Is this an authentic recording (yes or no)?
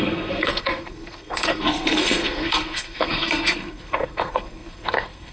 no